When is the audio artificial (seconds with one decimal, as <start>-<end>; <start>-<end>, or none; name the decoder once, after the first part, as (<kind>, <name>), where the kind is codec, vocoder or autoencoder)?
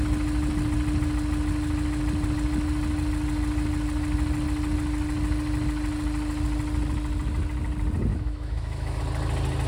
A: 8.1-9.0 (autoencoder, DAC-VAE)